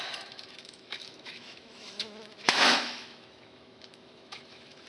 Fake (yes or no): yes